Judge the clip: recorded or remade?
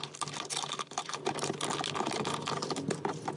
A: recorded